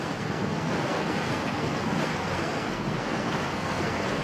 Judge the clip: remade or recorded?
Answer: remade